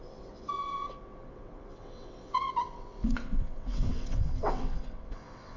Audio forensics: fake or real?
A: fake